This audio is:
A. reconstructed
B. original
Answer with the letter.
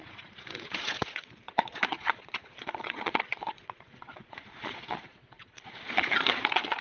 A